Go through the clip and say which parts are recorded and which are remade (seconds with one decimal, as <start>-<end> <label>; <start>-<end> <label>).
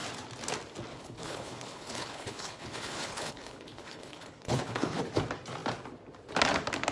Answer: 0.0-0.9 recorded; 0.9-5.0 remade; 5.0-6.9 recorded